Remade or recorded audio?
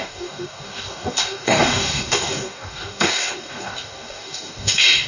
remade